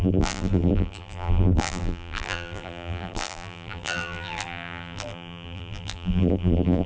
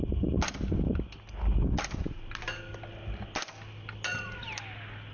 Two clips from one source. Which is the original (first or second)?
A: second